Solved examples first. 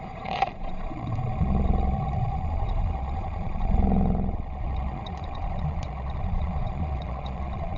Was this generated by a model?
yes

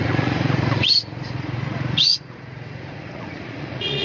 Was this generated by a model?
yes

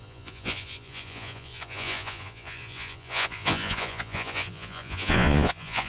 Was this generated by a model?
yes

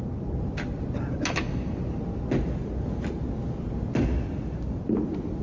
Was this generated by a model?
no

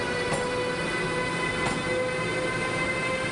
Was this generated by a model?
no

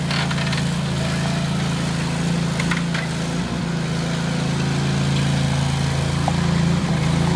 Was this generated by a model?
no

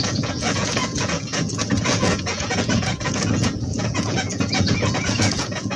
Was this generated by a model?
yes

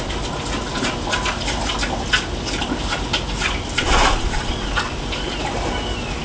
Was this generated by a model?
no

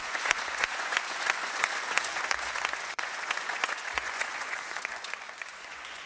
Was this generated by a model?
yes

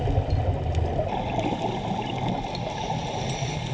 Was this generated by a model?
no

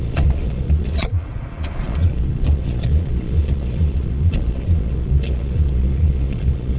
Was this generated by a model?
yes